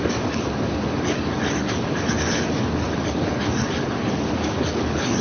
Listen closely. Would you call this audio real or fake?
fake